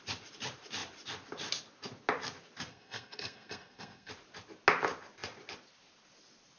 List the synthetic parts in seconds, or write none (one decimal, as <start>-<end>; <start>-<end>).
2.7-4.1